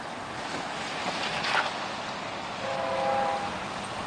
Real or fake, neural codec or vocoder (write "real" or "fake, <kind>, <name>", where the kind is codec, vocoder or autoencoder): real